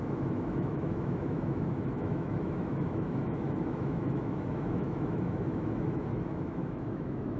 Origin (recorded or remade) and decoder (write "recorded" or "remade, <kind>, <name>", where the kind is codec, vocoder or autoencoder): remade, autoencoder, DAC-VAE